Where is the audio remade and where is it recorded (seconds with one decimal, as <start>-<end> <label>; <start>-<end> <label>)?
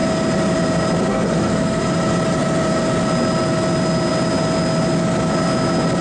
0.0-1.1 recorded; 1.1-1.8 remade; 1.8-6.0 recorded